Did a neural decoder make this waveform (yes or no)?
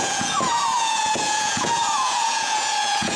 yes